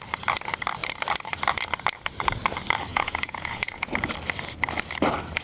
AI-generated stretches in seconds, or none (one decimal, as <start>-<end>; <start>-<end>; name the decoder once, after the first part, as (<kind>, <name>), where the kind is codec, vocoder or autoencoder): 2.9-3.9 (vocoder, Vocos)